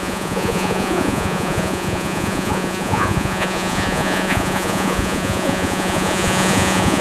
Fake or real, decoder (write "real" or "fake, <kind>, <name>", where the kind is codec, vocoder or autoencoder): fake, vocoder, Vocos